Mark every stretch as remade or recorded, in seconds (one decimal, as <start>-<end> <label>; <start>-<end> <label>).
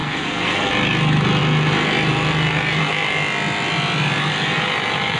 0.0-0.7 remade; 0.7-5.2 recorded